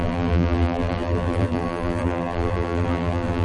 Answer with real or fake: fake